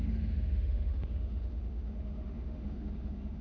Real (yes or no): no